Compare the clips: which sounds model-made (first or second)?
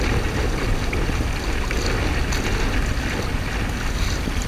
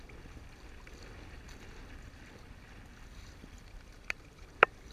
second